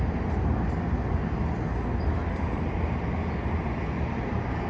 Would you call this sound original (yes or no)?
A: yes